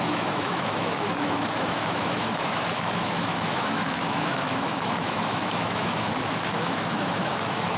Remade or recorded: remade